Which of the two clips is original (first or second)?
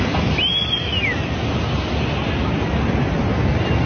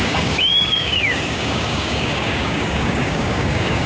first